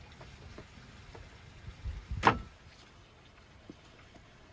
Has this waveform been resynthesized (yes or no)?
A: no